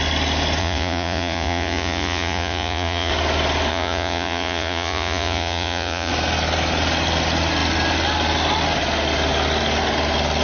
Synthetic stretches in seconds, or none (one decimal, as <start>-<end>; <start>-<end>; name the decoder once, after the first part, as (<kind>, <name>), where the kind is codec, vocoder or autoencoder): 0.6-3.1 (vocoder, Vocos); 3.7-6.1

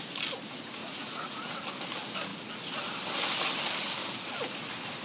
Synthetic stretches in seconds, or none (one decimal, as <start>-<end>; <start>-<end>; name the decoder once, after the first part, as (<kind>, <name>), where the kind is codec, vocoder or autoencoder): 0.8-1.5 (vocoder, Vocos)